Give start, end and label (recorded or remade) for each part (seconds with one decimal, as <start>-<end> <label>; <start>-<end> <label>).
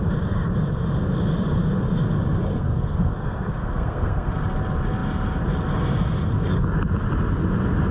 0.0-2.5 recorded; 2.5-4.3 remade; 4.3-7.9 recorded